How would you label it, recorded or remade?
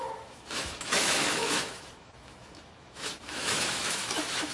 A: remade